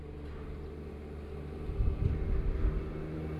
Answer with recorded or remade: recorded